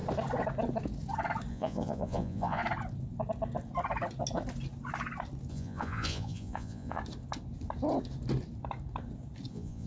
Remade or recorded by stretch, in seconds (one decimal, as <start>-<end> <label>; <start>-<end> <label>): 0.0-1.5 recorded; 1.5-2.6 remade; 2.6-5.5 recorded; 5.5-7.0 remade; 7.0-9.5 recorded; 9.5-9.9 remade